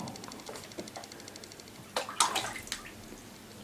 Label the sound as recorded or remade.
recorded